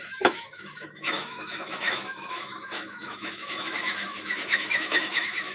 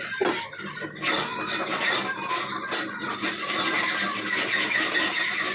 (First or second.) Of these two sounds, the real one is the second